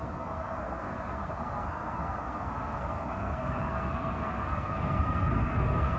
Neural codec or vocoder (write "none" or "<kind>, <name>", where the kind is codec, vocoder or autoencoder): codec, SNAC